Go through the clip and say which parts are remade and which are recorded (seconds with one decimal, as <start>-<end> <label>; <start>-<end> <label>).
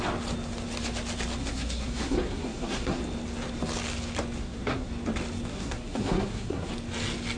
0.0-1.4 recorded; 1.4-3.0 remade; 3.0-4.4 recorded; 4.4-4.9 remade; 4.9-5.5 recorded; 5.5-6.7 remade; 6.7-7.4 recorded